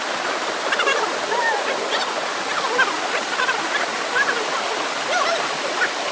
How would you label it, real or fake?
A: real